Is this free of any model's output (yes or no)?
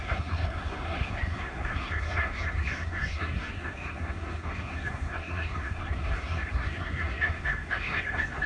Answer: no